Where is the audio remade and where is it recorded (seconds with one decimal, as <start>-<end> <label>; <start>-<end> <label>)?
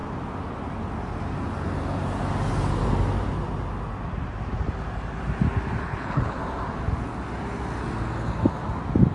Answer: 0.0-5.9 recorded; 5.9-6.4 remade; 6.4-9.1 recorded